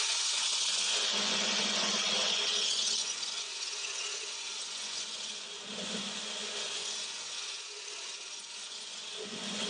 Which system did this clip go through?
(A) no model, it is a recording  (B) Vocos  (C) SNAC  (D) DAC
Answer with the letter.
B